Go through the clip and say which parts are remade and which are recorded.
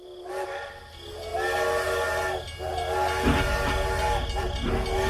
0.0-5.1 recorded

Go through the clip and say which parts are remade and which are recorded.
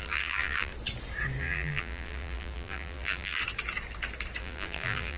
0.0-0.7 remade; 0.7-1.4 recorded; 1.4-3.4 remade; 3.4-4.4 recorded; 4.4-5.2 remade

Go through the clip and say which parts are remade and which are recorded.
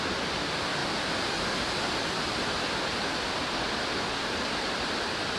0.0-5.4 recorded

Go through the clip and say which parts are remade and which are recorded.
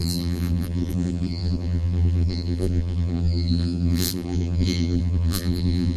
0.0-6.0 remade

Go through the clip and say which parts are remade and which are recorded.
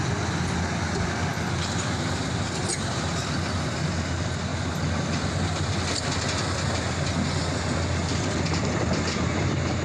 0.0-9.8 recorded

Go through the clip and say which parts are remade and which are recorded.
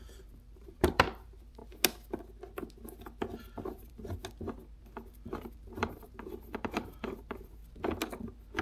0.0-1.6 remade; 1.6-3.4 recorded; 3.4-4.2 remade; 4.2-5.1 recorded; 5.1-7.6 remade; 7.6-8.6 recorded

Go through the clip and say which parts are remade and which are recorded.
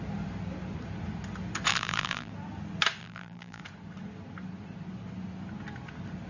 0.0-1.7 recorded; 1.7-2.3 remade; 2.3-3.0 recorded; 3.0-3.6 remade; 3.6-6.3 recorded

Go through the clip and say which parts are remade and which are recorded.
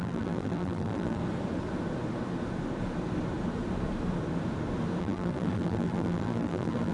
0.0-1.2 remade; 1.2-5.0 recorded; 5.0-6.9 remade